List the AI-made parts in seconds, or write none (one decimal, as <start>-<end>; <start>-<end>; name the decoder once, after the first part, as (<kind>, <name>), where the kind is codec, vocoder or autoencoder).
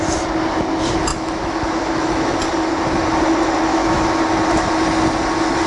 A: 1.1-2.4 (autoencoder, DAC-VAE); 3.7-4.2